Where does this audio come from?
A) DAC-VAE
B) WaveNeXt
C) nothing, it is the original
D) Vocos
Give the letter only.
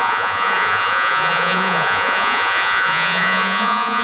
D